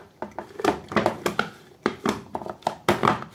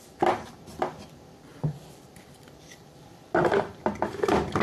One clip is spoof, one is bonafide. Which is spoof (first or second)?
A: second